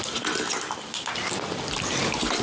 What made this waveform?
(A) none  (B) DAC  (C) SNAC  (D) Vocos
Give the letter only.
A